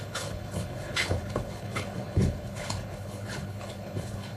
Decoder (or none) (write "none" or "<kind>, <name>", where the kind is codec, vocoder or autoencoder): codec, HILCodec